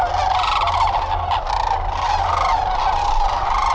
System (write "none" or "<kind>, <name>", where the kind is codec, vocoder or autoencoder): none